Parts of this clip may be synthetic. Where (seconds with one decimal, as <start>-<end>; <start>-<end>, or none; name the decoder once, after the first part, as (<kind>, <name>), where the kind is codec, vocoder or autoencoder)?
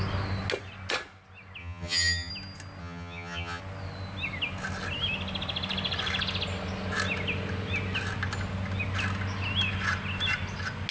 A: 1.6-2.3 (vocoder, HiFi-GAN); 2.8-3.6